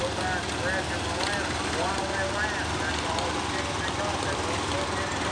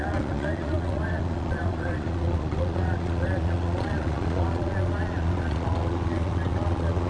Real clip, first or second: first